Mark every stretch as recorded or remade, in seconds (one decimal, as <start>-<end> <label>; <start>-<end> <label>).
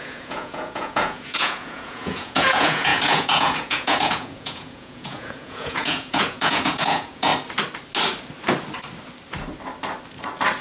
0.0-7.3 remade; 7.3-10.6 recorded